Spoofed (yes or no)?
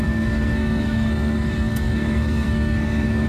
yes